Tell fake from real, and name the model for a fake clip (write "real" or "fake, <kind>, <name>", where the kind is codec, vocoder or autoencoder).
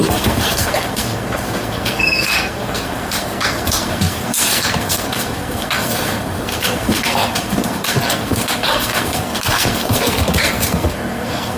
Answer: fake, codec, SNAC